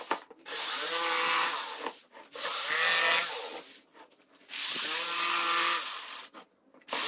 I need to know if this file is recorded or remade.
recorded